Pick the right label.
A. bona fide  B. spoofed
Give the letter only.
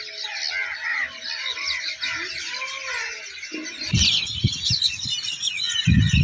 A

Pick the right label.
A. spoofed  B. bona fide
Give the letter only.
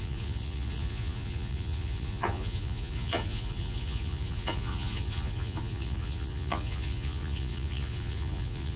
A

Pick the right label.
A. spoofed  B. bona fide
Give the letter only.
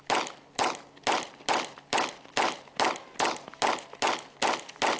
B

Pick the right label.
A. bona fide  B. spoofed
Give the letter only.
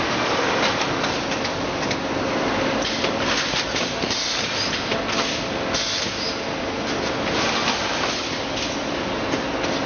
A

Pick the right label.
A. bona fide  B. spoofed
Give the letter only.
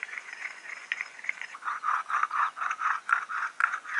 B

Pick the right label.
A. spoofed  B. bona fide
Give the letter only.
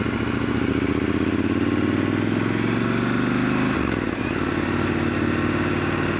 B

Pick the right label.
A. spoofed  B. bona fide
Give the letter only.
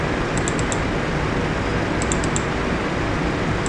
B